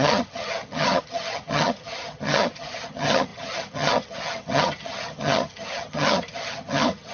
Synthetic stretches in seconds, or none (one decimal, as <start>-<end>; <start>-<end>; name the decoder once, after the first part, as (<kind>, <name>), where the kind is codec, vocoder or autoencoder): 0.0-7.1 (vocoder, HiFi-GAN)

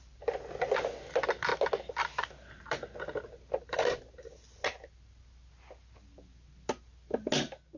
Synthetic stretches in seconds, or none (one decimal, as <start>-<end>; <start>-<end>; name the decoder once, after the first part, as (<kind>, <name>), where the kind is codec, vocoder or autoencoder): none

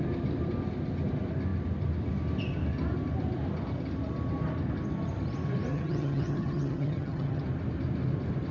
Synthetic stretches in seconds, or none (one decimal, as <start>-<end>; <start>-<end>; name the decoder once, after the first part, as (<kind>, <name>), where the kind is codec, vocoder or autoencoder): 5.7-7.4 (vocoder, HiFi-GAN)

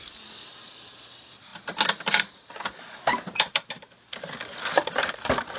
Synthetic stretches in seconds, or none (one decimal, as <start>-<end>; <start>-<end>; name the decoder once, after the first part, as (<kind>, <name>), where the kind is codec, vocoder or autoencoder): none

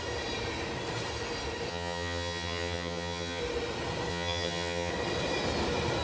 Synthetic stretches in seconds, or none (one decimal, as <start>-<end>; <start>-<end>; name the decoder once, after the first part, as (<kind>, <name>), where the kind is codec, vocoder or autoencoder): 1.7-3.4 (vocoder, HiFi-GAN); 4.1-4.9